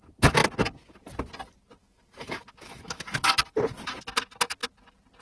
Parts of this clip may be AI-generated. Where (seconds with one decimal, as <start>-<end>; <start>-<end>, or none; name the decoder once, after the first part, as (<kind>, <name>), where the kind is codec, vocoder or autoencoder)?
1.8-3.0 (autoencoder, DAC-VAE)